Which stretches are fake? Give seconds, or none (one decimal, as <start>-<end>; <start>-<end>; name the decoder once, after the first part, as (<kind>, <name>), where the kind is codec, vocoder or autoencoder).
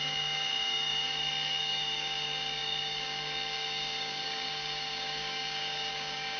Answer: 0.0-6.4 (codec, DAC)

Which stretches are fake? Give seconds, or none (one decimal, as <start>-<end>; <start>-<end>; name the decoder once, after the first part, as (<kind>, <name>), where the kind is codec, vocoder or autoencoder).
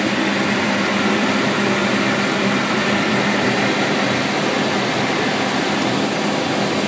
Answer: none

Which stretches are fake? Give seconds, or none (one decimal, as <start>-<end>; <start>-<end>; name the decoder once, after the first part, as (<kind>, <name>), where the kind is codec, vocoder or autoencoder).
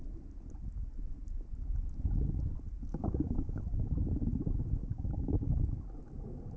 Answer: 2.9-3.6 (codec, DAC); 4.8-5.6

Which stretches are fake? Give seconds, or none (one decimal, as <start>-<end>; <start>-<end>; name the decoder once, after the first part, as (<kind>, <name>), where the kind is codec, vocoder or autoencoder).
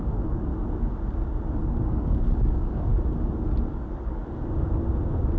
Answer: 0.0-0.5 (codec, DAC); 1.6-2.9; 3.7-4.2